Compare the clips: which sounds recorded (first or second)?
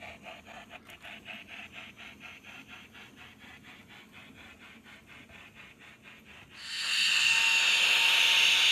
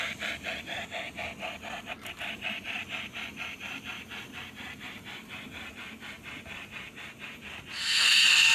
first